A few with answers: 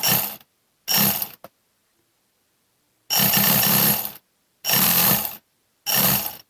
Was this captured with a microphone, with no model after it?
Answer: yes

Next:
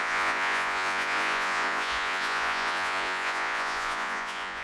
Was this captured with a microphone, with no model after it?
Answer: no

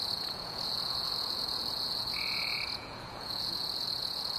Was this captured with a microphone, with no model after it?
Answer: no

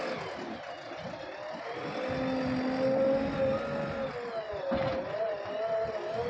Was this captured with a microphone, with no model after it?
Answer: yes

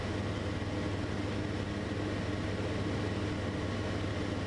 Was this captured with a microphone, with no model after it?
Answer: yes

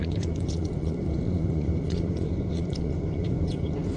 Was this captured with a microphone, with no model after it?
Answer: no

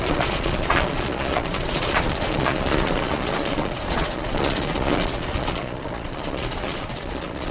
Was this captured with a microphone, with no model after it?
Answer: no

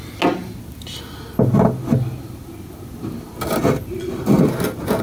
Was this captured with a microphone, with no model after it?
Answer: yes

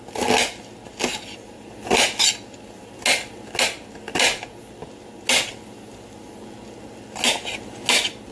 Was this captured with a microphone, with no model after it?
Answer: yes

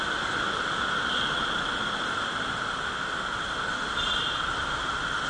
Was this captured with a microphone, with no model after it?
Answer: yes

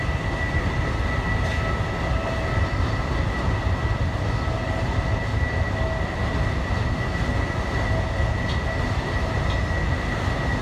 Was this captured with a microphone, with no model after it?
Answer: yes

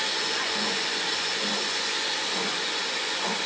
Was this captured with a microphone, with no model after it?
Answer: no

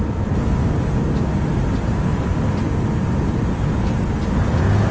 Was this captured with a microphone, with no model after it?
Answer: yes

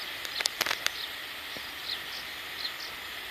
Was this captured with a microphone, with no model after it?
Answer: yes